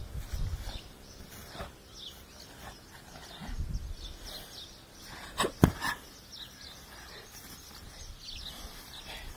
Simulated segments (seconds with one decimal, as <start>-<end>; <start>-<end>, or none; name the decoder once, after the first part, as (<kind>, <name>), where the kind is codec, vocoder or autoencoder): none

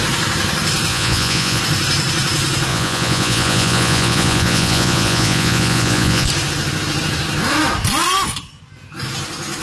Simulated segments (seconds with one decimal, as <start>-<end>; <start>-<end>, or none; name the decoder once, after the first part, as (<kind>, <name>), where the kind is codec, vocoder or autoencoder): 0.9-1.6 (vocoder, Vocos); 2.7-6.3

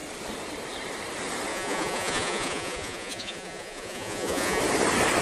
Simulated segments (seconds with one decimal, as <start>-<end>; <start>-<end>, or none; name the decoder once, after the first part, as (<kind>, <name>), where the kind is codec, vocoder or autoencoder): 1.5-4.6 (vocoder, Vocos)

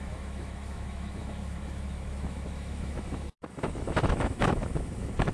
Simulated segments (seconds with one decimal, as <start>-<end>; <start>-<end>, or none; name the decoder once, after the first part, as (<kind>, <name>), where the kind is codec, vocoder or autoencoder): 0.0-5.3 (autoencoder, DAC-VAE)